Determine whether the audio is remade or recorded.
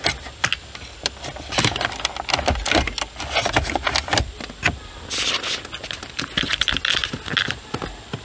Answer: recorded